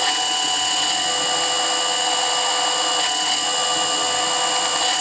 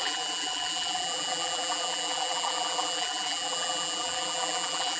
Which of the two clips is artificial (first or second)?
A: second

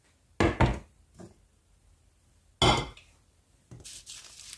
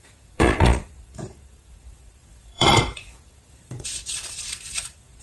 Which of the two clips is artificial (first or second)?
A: second